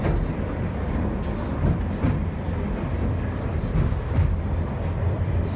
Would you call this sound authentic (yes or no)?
yes